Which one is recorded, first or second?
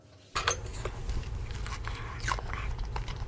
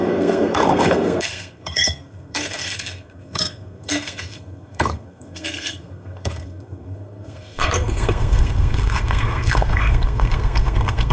first